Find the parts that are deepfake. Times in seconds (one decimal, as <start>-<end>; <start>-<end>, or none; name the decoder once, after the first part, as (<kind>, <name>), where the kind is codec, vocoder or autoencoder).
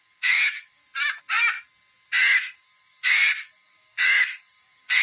0.0-0.8 (codec, DAC); 2.6-5.0